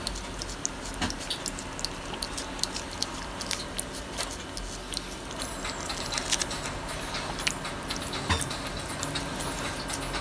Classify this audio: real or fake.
real